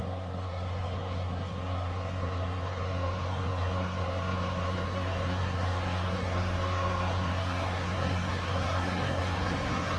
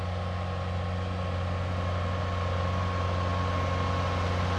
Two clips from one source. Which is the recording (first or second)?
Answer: second